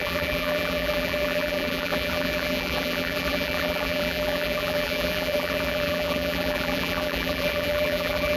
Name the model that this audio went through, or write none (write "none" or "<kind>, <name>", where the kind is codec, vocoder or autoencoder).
vocoder, BigVGAN v2